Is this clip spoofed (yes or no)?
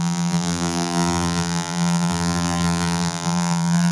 yes